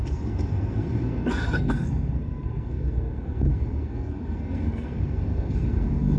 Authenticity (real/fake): fake